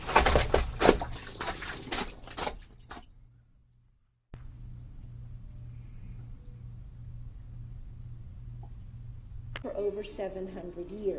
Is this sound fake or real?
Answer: real